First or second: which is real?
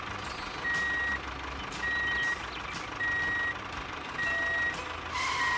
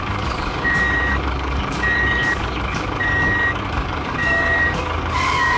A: first